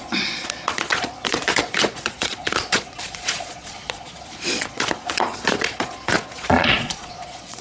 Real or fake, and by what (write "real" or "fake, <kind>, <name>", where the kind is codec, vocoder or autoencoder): fake, vocoder, Vocos